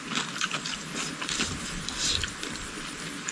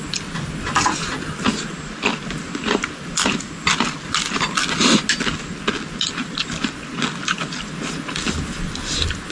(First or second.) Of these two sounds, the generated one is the first